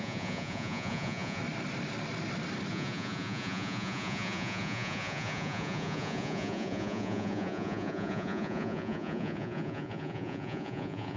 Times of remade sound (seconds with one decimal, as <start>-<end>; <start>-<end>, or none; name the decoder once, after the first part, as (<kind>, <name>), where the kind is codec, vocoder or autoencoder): 0.0-1.4 (vocoder, Vocos); 2.7-11.2